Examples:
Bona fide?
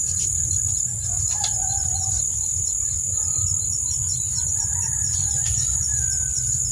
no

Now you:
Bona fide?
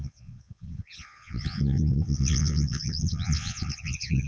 no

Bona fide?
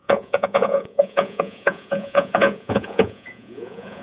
no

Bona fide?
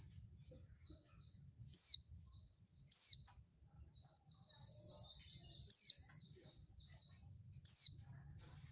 yes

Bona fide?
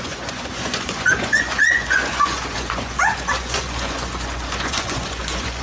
no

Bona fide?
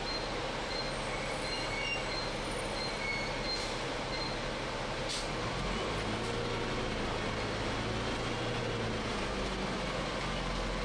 yes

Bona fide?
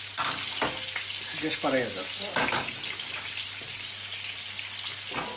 yes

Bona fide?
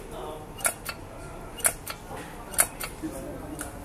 yes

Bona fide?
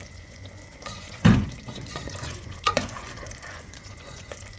no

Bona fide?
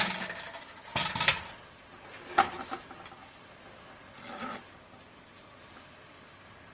yes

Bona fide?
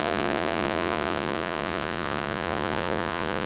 no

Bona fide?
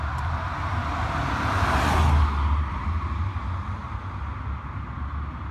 yes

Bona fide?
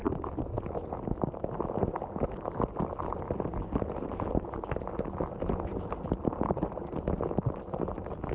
yes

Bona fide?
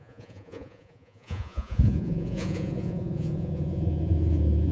no